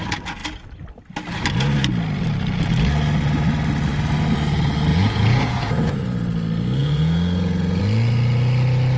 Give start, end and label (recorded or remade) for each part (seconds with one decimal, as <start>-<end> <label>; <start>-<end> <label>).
0.0-4.9 recorded; 4.9-5.9 remade; 5.9-6.8 recorded; 6.8-7.8 remade; 7.8-9.0 recorded